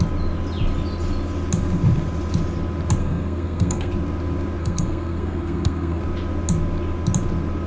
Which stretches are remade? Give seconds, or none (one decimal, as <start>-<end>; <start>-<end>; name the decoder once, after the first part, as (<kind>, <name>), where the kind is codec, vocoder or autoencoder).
3.0-3.9 (codec, SNAC); 4.6-6.0